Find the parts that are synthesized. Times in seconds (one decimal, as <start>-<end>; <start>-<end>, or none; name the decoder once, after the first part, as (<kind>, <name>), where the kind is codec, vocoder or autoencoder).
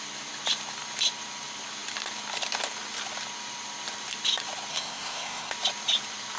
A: 4.7-5.5 (codec, SNAC)